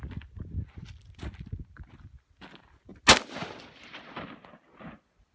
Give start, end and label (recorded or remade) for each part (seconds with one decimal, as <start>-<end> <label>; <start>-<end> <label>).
0.0-5.3 recorded